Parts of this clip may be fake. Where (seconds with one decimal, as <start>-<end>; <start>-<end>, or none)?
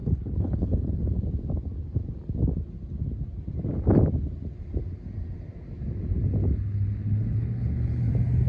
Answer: 0.0-1.1; 6.4-8.1